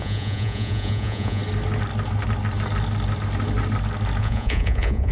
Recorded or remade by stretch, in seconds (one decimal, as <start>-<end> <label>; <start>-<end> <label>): 0.0-1.4 remade; 1.4-4.2 recorded; 4.2-5.1 remade